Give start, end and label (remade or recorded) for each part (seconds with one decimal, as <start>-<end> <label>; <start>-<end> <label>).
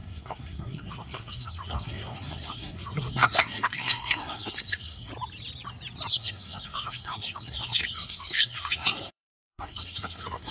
0.0-5.1 remade; 5.1-6.1 recorded; 6.1-10.5 remade